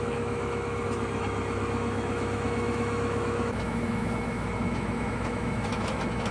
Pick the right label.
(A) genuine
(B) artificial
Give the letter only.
B